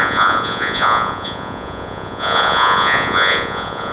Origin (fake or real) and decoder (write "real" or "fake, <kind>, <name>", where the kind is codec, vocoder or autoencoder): fake, vocoder, Vocos